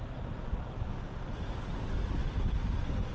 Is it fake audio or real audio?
real